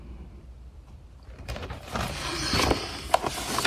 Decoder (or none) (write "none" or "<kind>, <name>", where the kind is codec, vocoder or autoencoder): vocoder, BigVGAN v2